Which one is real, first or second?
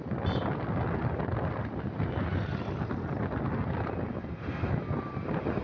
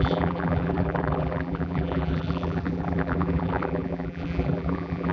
first